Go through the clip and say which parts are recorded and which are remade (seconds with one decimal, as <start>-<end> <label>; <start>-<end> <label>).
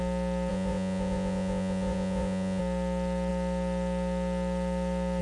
0.0-0.5 recorded; 0.5-2.6 remade; 2.6-5.2 recorded